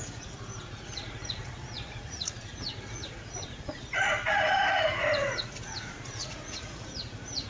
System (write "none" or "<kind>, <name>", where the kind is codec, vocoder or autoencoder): vocoder, Vocos